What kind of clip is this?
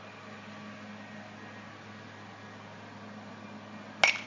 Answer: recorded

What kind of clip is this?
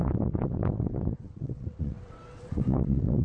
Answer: remade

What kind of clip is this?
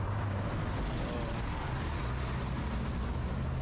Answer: recorded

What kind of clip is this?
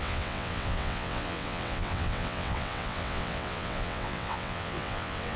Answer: remade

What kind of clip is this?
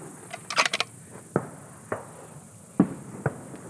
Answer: recorded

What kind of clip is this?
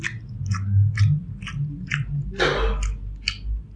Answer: recorded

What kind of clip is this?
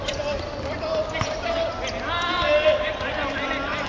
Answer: recorded